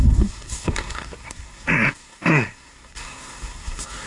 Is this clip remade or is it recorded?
remade